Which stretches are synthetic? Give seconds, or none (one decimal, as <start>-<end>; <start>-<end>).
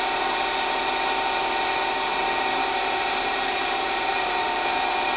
2.1-5.2